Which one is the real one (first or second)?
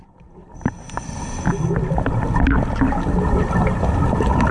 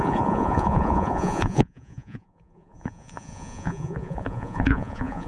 first